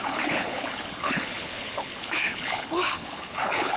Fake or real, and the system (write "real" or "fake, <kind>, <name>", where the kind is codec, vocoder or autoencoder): fake, codec, HILCodec